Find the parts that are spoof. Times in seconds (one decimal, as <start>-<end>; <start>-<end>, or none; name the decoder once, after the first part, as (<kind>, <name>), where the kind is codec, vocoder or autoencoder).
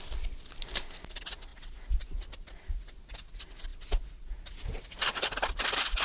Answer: none